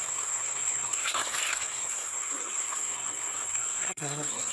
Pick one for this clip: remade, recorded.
remade